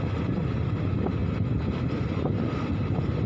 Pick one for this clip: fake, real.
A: real